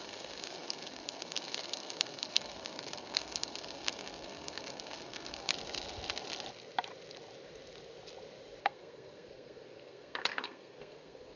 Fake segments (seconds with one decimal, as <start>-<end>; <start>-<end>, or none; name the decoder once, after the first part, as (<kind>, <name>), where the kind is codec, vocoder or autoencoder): 0.0-5.5 (codec, SNAC); 8.6-11.4